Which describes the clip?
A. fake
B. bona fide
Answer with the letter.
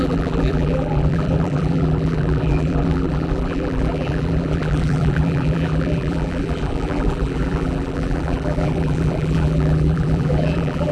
A